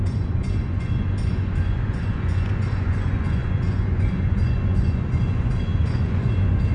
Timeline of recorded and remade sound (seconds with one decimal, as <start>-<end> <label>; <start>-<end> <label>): 0.0-6.7 remade

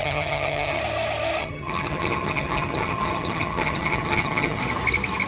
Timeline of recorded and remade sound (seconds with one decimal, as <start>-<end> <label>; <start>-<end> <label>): 0.0-0.8 remade; 0.8-1.4 recorded; 1.4-4.6 remade; 4.6-5.3 recorded

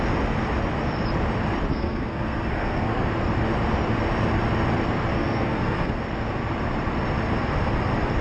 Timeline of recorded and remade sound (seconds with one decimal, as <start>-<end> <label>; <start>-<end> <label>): 0.0-1.7 recorded; 1.7-3.1 remade; 3.1-5.1 recorded; 5.1-6.0 remade; 6.0-8.2 recorded

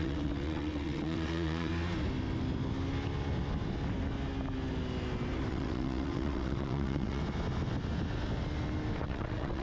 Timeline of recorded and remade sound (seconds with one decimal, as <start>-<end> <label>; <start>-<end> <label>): 0.0-1.7 remade; 1.7-5.5 recorded; 5.5-7.2 remade; 7.2-9.0 recorded; 9.0-9.6 remade

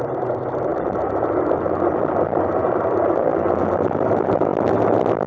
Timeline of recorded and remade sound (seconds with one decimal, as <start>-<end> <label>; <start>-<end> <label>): 0.0-0.7 remade; 0.7-2.5 recorded; 2.5-3.3 remade; 3.3-3.9 recorded; 3.9-4.5 remade; 4.5-5.3 recorded

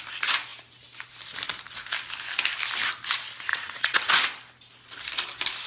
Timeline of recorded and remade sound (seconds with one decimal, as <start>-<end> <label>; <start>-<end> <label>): 0.0-3.5 recorded; 3.5-4.1 remade; 4.1-5.7 recorded

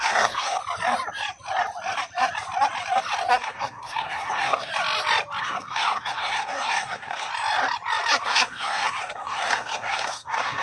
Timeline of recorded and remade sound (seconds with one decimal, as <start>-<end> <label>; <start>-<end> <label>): 0.0-0.6 remade; 0.6-3.3 recorded; 3.3-4.7 remade; 4.7-5.4 recorded; 5.4-7.3 remade; 7.3-8.2 recorded; 8.2-10.6 remade